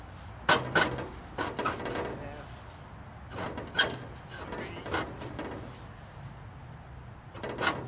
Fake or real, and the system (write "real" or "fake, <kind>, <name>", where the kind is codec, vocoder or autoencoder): real